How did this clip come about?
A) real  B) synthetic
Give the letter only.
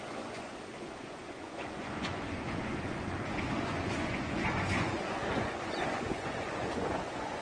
B